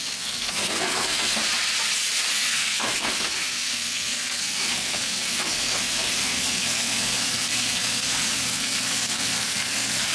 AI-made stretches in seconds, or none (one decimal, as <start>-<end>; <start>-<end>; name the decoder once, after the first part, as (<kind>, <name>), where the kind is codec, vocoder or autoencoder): 0.0-1.4 (codec, SNAC); 2.3-10.1